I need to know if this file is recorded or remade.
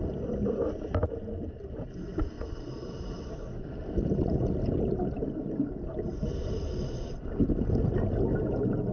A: recorded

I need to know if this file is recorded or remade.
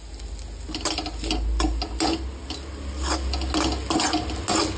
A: recorded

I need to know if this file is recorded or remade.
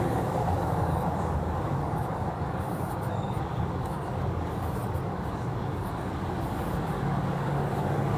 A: remade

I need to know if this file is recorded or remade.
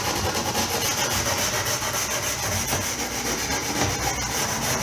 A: recorded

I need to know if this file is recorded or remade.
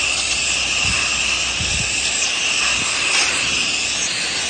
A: recorded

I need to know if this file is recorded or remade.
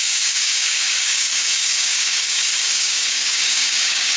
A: remade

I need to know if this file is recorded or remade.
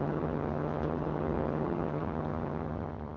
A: remade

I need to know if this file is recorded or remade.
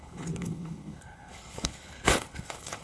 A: remade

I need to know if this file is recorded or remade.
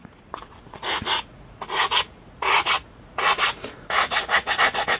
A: remade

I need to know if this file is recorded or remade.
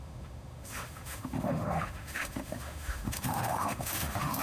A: remade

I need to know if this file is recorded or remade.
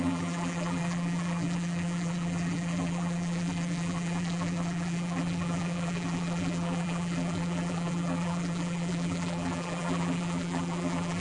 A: remade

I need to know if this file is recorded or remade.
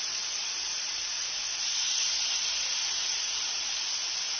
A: remade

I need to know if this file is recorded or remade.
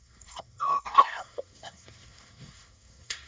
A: remade